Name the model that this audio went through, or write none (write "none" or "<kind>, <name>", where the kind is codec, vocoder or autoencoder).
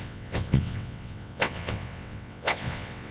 vocoder, WaveNeXt